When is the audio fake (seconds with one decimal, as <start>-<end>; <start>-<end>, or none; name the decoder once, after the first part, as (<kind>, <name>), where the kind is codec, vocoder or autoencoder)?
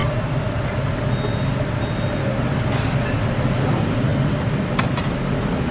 none